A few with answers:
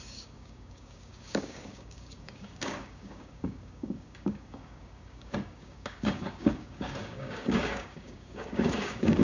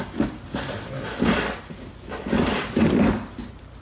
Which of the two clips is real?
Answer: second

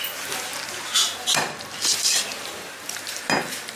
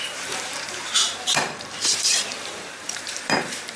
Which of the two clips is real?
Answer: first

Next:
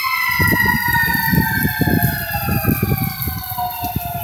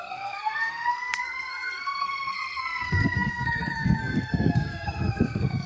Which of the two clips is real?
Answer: first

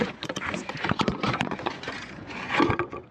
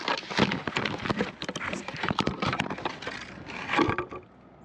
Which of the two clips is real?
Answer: second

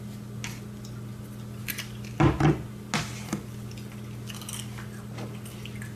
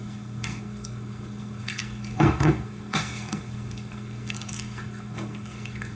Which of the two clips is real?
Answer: first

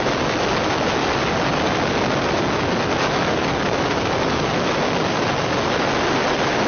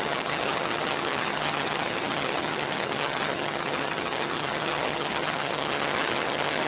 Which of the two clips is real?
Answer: first